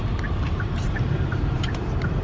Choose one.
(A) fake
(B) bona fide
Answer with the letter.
A